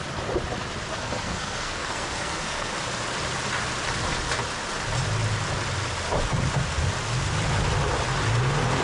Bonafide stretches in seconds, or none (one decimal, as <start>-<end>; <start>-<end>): 0.0-0.9; 2.7-8.8